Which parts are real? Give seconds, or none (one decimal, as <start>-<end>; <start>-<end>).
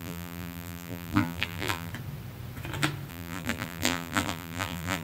1.9-3.1